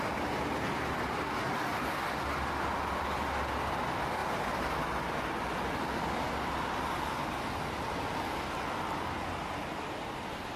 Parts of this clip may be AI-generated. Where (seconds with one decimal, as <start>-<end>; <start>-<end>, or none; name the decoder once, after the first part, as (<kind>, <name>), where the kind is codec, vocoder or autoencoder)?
none